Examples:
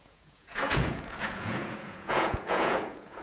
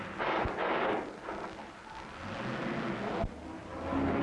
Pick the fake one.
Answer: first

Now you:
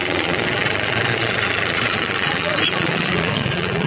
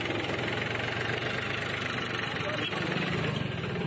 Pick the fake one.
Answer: first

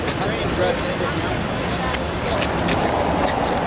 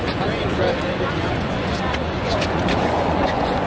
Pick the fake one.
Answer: second